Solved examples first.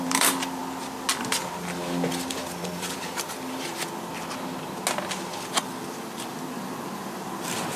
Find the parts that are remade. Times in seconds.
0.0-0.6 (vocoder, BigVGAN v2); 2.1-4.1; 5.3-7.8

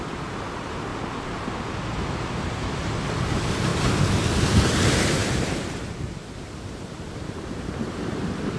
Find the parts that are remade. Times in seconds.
0.0-0.9 (vocoder, BigVGAN v2); 3.3-3.7; 4.4-8.6